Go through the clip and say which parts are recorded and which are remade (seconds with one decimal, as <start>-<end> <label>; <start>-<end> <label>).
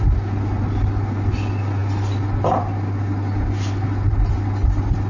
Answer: 0.0-5.1 recorded